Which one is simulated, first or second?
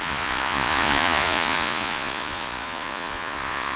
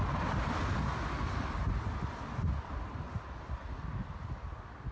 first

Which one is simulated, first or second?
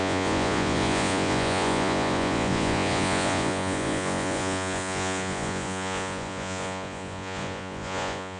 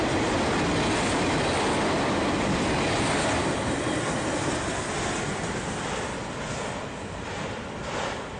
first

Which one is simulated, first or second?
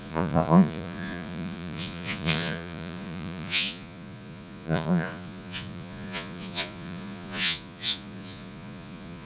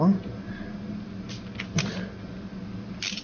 first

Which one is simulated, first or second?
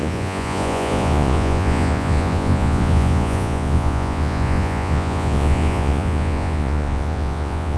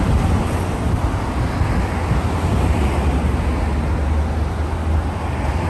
first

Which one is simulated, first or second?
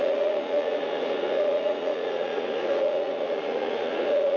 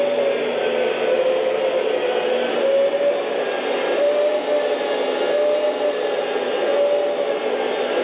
first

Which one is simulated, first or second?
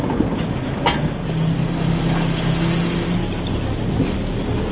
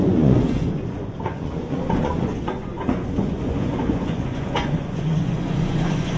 second